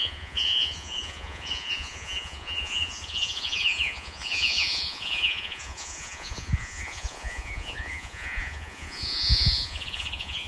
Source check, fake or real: fake